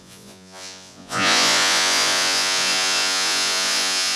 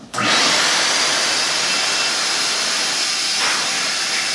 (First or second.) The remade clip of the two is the first